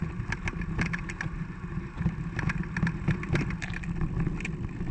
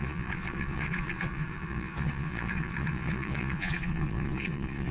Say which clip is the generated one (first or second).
second